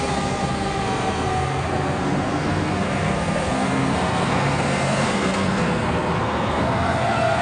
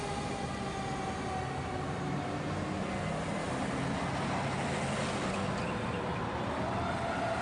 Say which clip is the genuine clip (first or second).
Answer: second